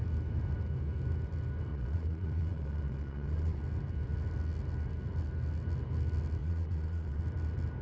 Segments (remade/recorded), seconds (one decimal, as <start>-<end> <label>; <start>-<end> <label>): 0.0-1.7 recorded; 1.7-3.6 remade; 3.6-6.4 recorded; 6.4-7.2 remade; 7.2-7.8 recorded